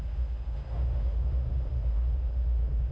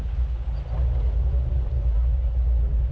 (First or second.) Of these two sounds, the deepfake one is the first